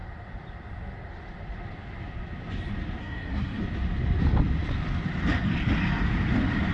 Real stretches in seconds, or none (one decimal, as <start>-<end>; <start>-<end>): 0.0-3.0; 3.6-6.7